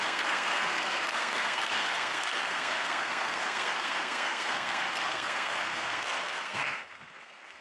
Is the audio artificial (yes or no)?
yes